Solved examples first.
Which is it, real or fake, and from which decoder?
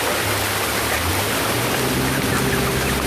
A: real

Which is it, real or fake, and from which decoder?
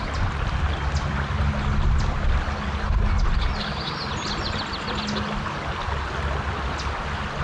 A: real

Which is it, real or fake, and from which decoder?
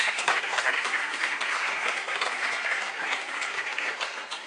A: fake, codec, SNAC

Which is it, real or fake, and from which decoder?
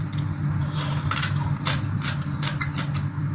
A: real